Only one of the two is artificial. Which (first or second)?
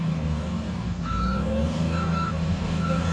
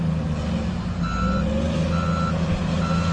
first